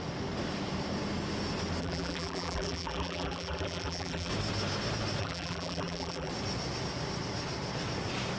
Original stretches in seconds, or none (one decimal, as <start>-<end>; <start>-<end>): 0.0-1.8; 4.3-5.2; 6.3-8.4